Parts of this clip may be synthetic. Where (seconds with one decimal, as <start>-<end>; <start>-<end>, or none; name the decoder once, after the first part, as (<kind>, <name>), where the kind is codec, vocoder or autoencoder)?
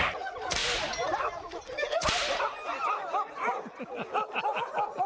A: none